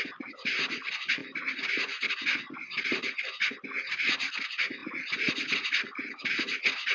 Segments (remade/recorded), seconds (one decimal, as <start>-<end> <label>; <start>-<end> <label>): 0.0-6.9 recorded